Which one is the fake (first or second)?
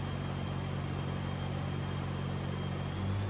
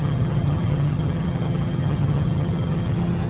second